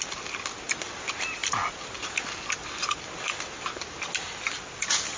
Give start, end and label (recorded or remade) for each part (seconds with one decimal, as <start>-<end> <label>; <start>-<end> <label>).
0.0-5.2 recorded